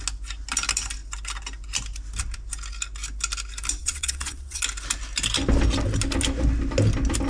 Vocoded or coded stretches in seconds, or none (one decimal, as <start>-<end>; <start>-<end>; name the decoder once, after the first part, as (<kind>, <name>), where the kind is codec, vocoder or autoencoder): 3.8-4.6 (vocoder, WaveNeXt)